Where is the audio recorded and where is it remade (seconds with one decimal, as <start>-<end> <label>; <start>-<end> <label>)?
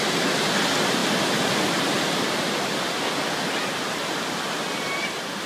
0.0-5.5 recorded